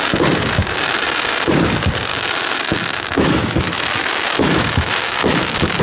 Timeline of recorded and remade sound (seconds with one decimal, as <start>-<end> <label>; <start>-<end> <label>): 0.0-2.1 recorded; 2.1-5.8 remade